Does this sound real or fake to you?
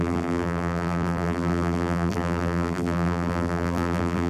fake